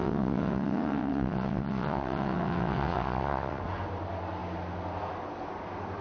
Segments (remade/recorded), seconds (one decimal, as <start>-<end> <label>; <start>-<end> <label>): 0.0-3.6 remade; 3.6-6.0 recorded